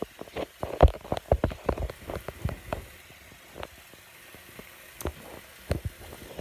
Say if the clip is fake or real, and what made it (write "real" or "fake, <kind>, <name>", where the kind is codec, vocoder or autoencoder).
real